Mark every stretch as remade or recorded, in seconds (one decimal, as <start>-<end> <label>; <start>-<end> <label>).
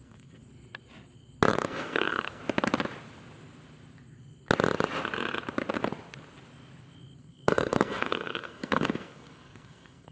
0.0-0.4 remade; 0.4-1.5 recorded; 1.5-2.4 remade; 2.4-7.2 recorded; 7.2-10.1 remade